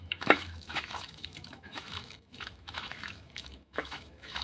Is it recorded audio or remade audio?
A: remade